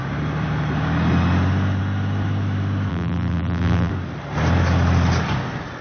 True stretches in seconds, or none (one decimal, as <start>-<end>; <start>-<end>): 0.0-2.9; 3.9-5.8